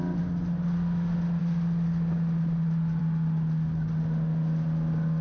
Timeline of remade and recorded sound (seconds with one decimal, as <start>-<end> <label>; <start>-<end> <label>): 0.0-5.2 recorded